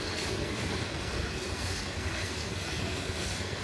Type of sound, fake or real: fake